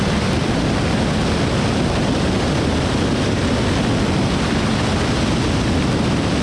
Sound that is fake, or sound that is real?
real